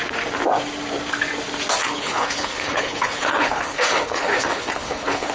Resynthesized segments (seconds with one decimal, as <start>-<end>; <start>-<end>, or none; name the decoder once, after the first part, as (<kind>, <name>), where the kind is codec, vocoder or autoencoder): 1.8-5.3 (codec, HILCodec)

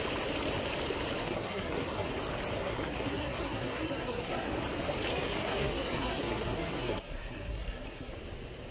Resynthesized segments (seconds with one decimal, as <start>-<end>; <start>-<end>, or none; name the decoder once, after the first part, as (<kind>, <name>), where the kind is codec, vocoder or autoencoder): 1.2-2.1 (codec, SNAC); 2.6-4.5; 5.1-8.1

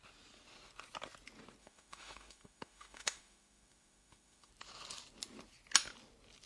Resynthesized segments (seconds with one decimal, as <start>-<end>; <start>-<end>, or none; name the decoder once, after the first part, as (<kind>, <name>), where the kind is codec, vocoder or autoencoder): 1.6-4.5 (autoencoder, DAC-VAE)

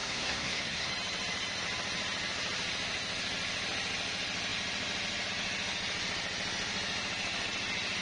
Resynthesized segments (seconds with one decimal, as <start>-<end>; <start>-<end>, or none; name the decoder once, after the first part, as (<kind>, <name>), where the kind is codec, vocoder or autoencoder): 0.0-0.9 (codec, SNAC)